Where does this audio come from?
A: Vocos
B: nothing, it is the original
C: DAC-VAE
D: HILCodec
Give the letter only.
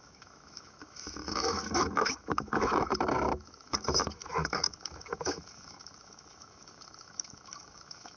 C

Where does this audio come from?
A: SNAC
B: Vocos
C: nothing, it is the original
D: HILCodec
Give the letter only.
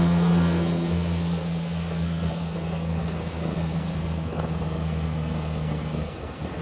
A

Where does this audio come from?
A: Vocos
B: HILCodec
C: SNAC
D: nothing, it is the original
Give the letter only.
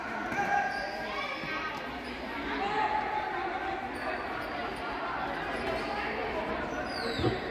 D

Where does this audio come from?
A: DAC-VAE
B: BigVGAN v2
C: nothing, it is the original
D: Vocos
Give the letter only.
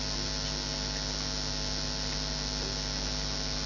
C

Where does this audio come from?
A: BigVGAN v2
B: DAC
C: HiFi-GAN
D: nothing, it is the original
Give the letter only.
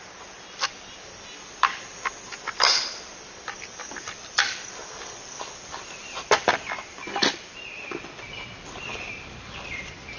A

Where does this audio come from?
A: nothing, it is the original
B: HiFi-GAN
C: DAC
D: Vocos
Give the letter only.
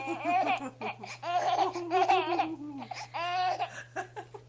A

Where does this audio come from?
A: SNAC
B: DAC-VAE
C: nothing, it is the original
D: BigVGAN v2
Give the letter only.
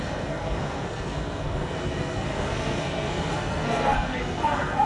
A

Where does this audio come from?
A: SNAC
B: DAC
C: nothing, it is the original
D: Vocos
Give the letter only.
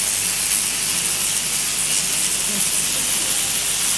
C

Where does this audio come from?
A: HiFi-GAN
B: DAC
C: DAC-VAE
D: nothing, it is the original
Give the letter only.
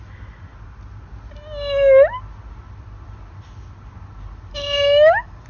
D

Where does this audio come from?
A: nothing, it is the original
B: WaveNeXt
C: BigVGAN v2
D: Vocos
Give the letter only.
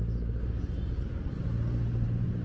A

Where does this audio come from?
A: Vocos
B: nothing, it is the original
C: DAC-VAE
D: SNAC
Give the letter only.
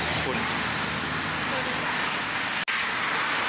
B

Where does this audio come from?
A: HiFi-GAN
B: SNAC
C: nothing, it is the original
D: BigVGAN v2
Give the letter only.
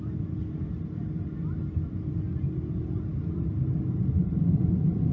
C